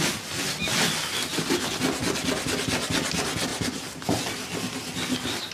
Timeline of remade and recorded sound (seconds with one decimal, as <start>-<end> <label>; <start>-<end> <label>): 0.0-5.5 recorded